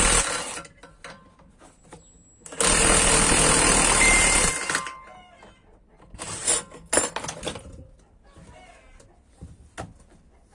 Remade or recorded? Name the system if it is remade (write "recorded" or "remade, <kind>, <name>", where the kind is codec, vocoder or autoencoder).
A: recorded